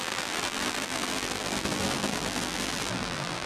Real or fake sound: fake